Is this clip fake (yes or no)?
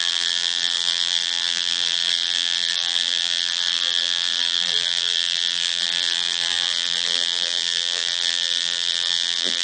yes